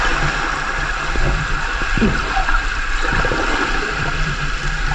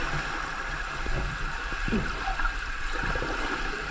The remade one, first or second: second